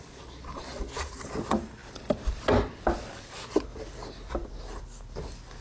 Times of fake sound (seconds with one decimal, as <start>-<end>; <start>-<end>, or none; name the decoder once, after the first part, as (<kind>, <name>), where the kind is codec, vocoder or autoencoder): none